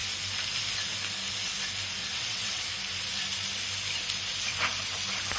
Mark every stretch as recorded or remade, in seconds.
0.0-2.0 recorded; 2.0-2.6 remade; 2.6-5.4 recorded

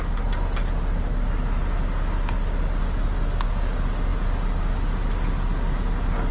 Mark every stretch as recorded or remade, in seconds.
0.0-6.3 recorded

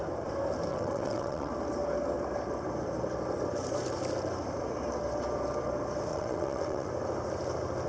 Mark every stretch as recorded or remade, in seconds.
0.0-0.7 recorded; 0.7-1.5 remade; 1.5-6.1 recorded; 6.1-6.9 remade; 6.9-7.9 recorded

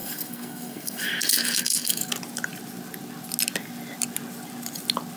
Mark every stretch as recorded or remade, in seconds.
0.0-2.1 remade; 2.1-5.2 recorded